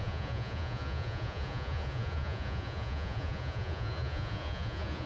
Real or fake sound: fake